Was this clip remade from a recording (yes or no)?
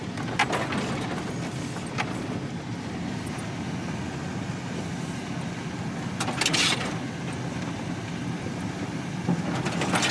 no